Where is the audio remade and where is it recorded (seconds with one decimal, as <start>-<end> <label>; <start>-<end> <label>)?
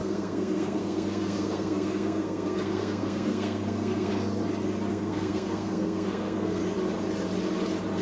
0.0-4.1 remade; 4.1-4.9 recorded; 4.9-6.6 remade; 6.6-8.0 recorded